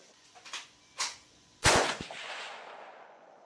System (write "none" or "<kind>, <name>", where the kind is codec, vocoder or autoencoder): vocoder, Vocos